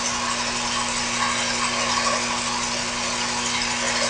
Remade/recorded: recorded